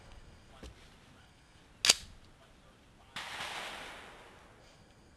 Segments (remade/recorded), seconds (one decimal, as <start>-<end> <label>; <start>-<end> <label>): 0.0-0.5 remade; 0.5-1.2 recorded; 1.2-1.6 remade; 1.6-4.6 recorded; 4.6-5.2 remade